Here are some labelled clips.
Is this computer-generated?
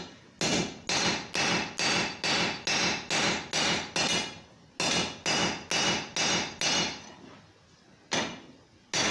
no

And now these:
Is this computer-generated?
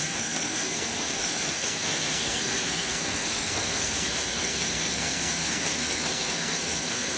yes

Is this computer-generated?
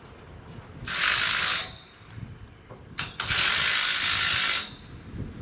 no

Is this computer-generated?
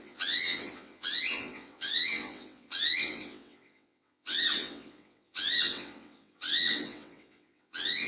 yes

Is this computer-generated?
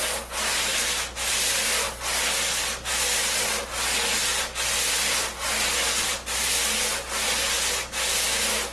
no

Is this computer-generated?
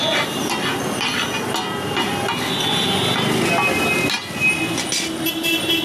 no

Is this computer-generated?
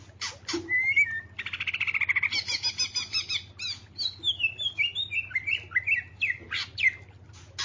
no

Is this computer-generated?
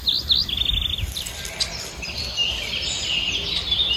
no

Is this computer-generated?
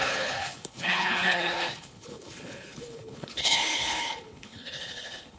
yes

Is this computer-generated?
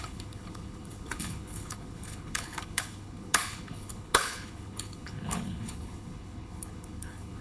yes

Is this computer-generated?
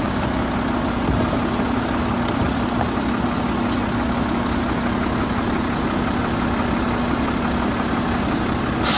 no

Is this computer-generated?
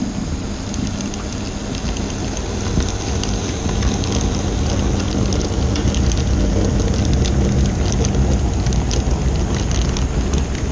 no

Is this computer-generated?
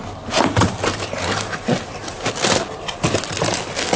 no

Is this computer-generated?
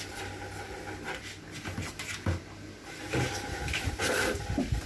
no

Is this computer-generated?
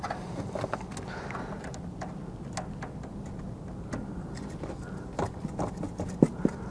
no